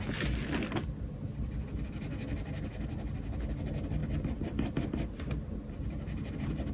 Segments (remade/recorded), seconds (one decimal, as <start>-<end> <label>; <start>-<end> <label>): 0.0-6.7 recorded